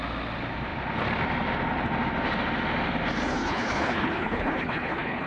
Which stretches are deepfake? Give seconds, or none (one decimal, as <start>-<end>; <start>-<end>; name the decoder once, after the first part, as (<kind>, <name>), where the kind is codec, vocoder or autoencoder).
3.3-5.3 (codec, HILCodec)